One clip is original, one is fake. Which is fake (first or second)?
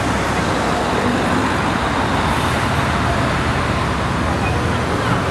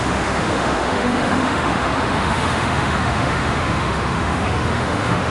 second